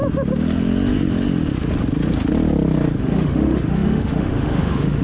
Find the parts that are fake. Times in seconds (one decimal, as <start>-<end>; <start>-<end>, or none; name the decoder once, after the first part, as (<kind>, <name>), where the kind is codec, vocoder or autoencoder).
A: 3.0-5.0 (autoencoder, DAC-VAE)